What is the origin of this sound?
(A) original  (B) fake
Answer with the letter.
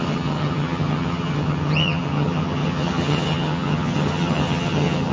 B